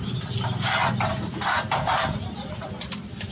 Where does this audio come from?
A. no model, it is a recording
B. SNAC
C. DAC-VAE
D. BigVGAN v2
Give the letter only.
D